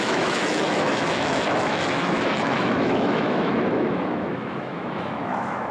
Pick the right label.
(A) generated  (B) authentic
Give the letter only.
A